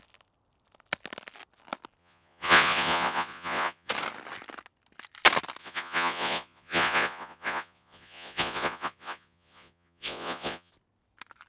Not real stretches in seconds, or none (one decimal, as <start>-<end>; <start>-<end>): 2.0-3.9; 5.6-10.7